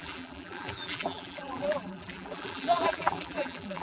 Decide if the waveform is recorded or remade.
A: remade